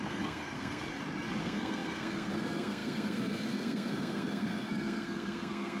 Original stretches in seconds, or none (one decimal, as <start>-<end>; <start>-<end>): 0.8-1.4